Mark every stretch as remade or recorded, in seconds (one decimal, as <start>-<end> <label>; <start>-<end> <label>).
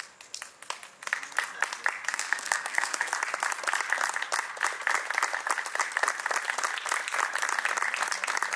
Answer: 0.0-2.1 recorded; 2.1-3.1 remade; 3.1-8.6 recorded